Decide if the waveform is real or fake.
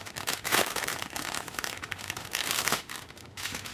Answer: fake